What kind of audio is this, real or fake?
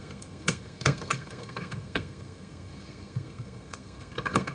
fake